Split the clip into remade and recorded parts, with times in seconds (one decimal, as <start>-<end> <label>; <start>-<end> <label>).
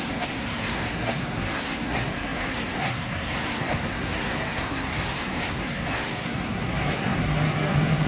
0.0-8.1 remade